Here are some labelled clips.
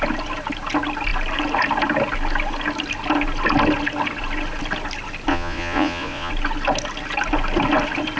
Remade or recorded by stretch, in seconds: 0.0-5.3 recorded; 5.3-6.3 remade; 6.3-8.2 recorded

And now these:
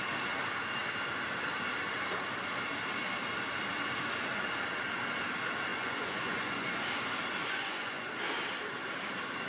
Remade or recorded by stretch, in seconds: 0.0-5.7 recorded; 5.7-6.8 remade; 6.8-7.4 recorded; 7.4-8.1 remade; 8.1-9.5 recorded

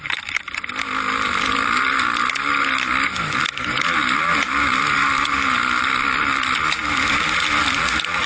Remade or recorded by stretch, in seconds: 0.0-8.3 recorded

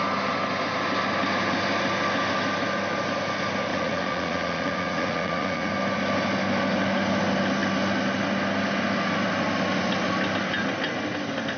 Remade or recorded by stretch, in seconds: 0.0-3.7 recorded; 3.7-5.7 remade; 5.7-11.6 recorded

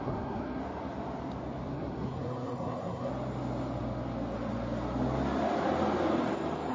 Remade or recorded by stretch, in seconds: 0.0-0.6 remade; 0.6-1.7 recorded; 1.7-3.1 remade; 3.1-6.7 recorded

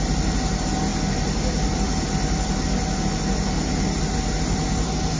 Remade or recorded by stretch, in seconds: 0.0-5.2 recorded

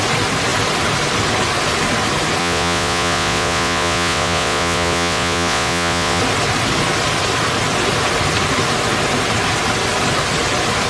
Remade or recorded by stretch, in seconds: 0.0-2.4 recorded; 2.4-6.2 remade; 6.2-10.9 recorded

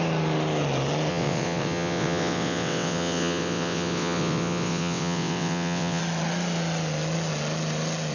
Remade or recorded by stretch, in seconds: 0.0-1.1 recorded; 1.1-6.0 remade; 6.0-8.1 recorded